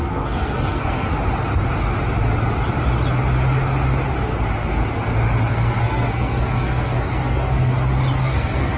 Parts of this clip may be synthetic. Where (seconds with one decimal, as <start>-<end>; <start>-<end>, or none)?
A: 0.0-1.1; 5.5-7.7; 8.2-8.8